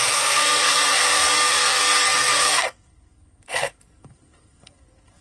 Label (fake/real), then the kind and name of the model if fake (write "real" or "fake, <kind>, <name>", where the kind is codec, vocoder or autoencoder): fake, codec, SNAC